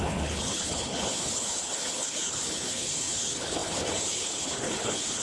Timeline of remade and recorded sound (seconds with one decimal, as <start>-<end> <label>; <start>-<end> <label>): 0.0-5.2 remade